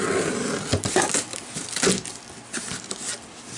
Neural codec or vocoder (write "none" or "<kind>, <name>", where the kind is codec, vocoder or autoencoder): none